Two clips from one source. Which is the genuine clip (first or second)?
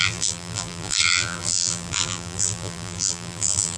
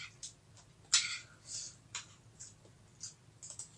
second